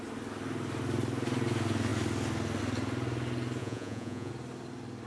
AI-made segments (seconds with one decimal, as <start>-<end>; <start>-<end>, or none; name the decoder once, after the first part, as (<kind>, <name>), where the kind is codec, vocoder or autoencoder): 3.6-4.3 (vocoder, Vocos)